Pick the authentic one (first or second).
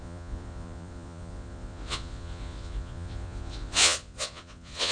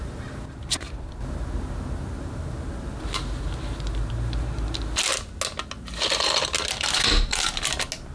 second